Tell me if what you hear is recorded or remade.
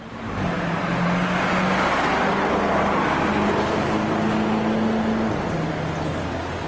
recorded